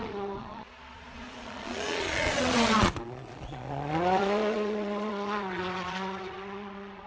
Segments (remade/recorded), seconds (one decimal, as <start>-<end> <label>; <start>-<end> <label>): 0.0-7.1 remade